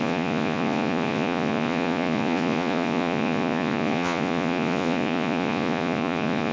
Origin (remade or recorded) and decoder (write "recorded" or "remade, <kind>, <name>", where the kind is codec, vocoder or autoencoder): remade, vocoder, Vocos